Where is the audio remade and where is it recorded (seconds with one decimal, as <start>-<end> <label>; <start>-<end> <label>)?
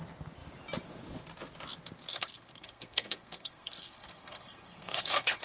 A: 0.0-2.1 recorded; 2.1-5.4 remade